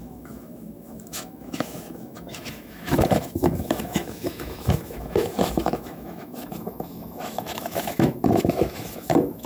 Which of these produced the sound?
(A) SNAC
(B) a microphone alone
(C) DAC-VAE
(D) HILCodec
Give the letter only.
C